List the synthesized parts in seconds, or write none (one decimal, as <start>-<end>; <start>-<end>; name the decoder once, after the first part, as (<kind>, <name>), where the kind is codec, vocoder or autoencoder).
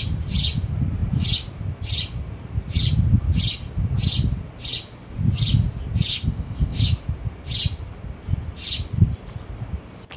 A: 6.1-6.8 (codec, ZipCodec)